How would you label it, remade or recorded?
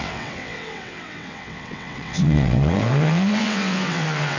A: remade